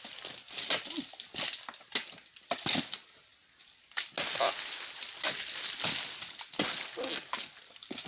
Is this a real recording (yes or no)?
yes